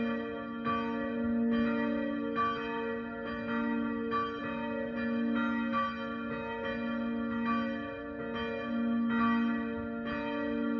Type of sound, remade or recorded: recorded